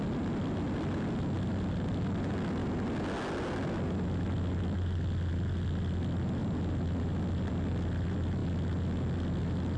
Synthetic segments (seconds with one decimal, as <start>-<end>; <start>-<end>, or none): none